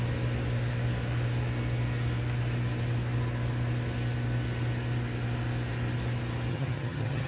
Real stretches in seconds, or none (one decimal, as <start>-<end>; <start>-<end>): 0.0-6.5